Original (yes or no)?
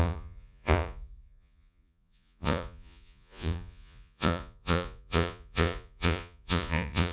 no